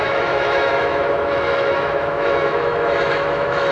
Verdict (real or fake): fake